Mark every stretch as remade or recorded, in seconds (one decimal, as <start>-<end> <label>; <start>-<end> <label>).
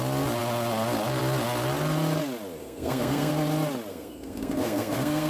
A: 0.0-2.6 recorded; 2.6-3.3 remade; 3.3-3.9 recorded; 3.9-5.3 remade